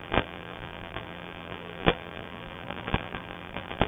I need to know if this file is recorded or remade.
remade